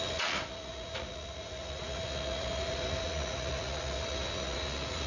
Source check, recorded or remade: remade